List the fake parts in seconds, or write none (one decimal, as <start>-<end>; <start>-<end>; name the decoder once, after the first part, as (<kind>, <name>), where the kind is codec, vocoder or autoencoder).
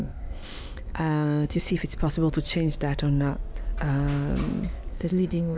0.0-1.7 (codec, ZipCodec); 4.9-5.6